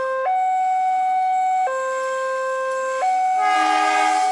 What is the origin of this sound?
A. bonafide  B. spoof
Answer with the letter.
A